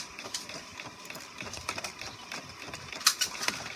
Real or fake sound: fake